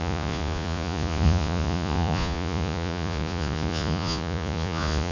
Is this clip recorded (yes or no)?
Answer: no